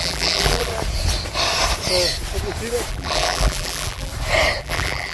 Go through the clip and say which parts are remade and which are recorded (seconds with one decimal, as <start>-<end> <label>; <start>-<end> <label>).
0.0-0.7 remade; 0.7-2.9 recorded; 2.9-4.1 remade; 4.1-4.6 recorded; 4.6-5.1 remade